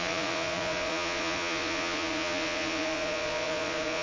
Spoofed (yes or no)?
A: yes